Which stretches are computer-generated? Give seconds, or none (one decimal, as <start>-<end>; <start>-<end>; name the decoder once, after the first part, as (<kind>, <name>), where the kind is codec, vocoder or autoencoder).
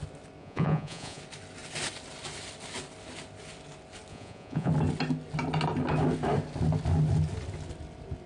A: 0.4-1.2 (vocoder, Vocos); 4.1-4.7